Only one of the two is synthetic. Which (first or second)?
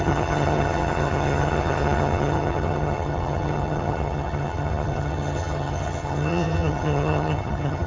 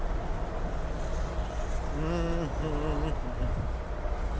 first